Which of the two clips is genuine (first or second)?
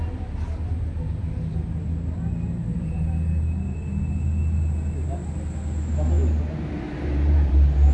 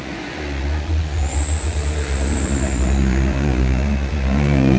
first